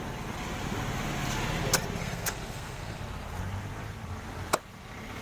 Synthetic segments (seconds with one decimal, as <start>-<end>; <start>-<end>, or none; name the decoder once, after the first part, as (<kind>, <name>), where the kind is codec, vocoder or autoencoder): 2.0-3.0 (codec, SNAC)